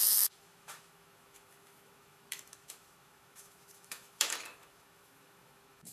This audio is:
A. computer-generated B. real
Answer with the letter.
A